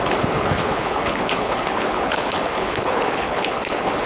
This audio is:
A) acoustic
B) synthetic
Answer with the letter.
B